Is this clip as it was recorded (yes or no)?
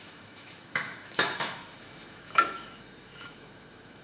no